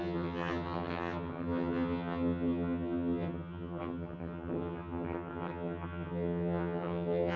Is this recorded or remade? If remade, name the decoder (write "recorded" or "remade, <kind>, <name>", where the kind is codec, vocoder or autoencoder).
remade, vocoder, HiFi-GAN